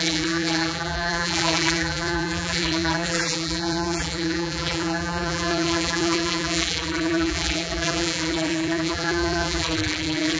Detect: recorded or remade remade